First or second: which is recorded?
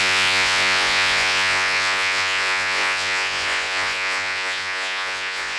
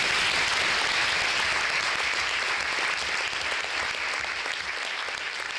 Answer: second